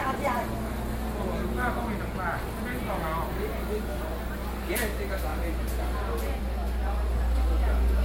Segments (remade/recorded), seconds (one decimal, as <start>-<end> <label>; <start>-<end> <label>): 0.0-8.0 recorded